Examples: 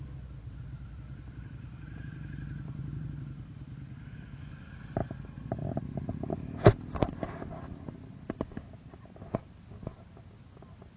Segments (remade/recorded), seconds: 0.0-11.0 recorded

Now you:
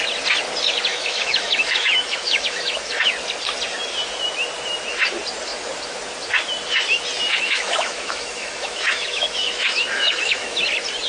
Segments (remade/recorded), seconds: 0.0-0.9 recorded; 0.9-3.1 remade; 3.1-7.3 recorded; 7.3-10.6 remade; 10.6-11.1 recorded

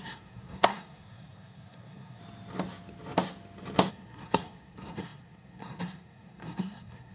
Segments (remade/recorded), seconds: 0.0-2.2 remade; 2.2-3.9 recorded; 3.9-7.1 remade

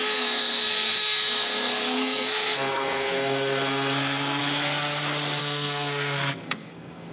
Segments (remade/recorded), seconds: 0.0-4.4 remade; 4.4-5.4 recorded; 5.4-7.1 remade

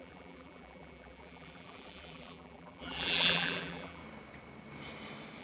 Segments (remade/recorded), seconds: 0.0-4.0 remade; 4.0-5.4 recorded

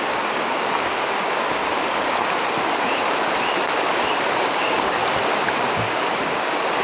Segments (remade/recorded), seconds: 0.0-1.6 remade; 1.6-4.4 recorded; 4.4-5.0 remade; 5.0-5.5 recorded; 5.5-6.8 remade

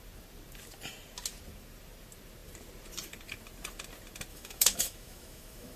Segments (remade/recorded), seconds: 0.0-4.3 recorded; 4.3-5.8 remade